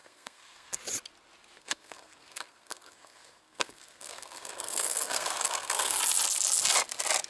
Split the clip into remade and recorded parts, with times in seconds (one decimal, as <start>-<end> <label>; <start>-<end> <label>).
0.0-0.8 remade; 0.8-1.6 recorded; 1.6-6.0 remade; 6.0-7.3 recorded